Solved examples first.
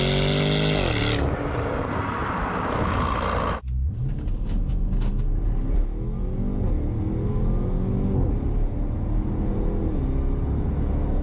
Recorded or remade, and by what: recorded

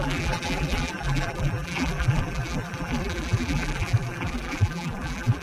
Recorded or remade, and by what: remade, vocoder, BigVGAN v2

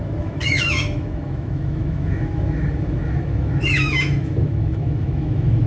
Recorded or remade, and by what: remade, autoencoder, DAC-VAE